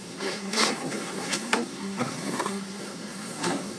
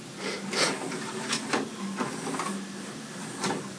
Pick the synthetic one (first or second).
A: first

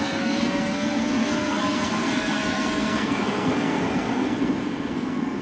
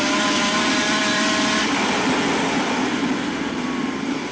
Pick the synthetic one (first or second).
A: first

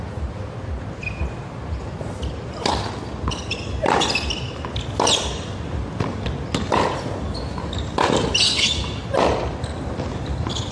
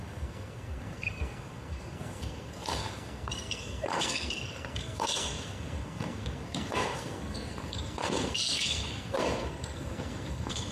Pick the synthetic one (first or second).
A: second